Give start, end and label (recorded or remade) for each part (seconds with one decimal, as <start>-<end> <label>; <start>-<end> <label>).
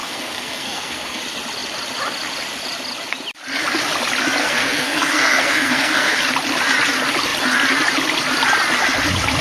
0.0-1.2 remade; 1.2-4.4 recorded; 4.4-6.2 remade; 6.2-9.4 recorded